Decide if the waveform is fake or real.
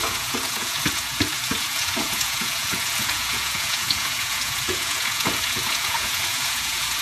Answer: fake